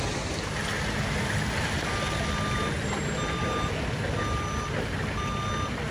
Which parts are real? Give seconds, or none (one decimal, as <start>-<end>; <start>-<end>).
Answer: 0.0-5.9